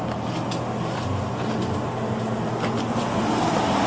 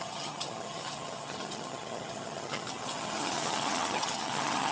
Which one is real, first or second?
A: first